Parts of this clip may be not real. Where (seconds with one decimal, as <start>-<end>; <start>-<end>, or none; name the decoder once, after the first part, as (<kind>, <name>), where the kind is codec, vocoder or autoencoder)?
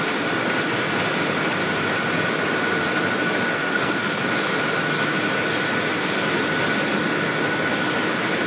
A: 3.5-4.2 (codec, SNAC)